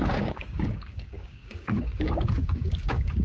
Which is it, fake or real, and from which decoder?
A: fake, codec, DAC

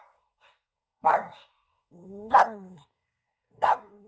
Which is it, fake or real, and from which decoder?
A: fake, codec, SNAC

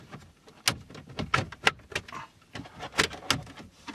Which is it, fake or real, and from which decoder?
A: real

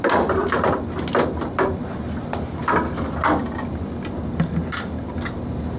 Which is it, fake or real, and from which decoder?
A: real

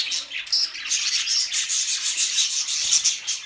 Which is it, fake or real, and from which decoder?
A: real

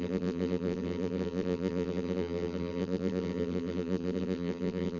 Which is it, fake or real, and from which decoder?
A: fake, vocoder, BigVGAN v2